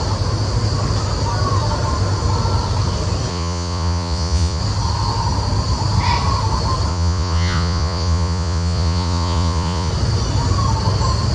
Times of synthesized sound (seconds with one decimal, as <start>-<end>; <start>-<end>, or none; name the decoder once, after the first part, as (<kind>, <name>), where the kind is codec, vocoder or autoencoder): 3.3-4.6 (vocoder, Vocos); 6.9-9.9